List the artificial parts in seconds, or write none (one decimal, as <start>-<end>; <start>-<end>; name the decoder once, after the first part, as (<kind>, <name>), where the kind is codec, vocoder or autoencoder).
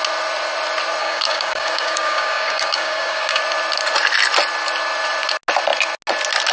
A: 1.0-3.4 (codec, DAC)